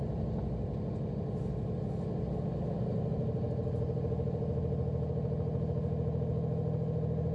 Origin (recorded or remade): recorded